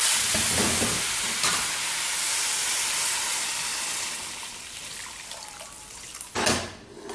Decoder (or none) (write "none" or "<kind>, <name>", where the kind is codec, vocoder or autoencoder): none